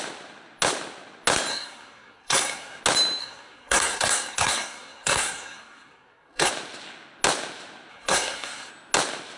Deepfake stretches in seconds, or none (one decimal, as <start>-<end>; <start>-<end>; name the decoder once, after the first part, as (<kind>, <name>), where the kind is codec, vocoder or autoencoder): 1.5-2.8 (codec, SNAC); 3.2-6.5; 7.9-8.7